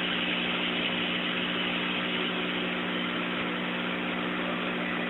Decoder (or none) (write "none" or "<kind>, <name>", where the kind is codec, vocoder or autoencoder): none